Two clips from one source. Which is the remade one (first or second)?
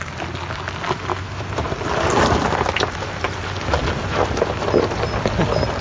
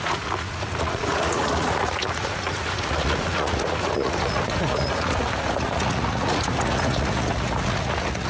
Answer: second